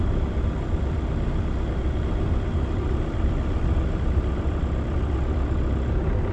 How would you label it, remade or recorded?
recorded